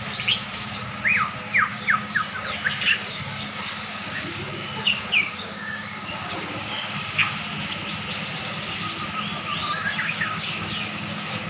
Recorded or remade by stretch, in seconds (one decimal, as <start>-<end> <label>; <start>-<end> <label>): 0.0-1.7 recorded; 1.7-2.3 remade; 2.3-2.9 recorded; 2.9-7.4 remade; 7.4-9.6 recorded; 9.6-11.5 remade